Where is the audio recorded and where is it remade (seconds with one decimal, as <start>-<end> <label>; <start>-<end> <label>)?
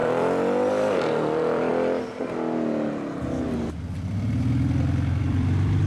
0.0-1.7 remade; 1.7-5.2 recorded; 5.2-5.9 remade